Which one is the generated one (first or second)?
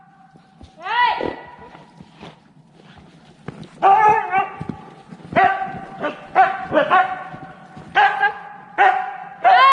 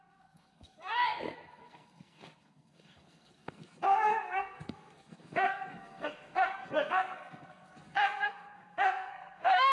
second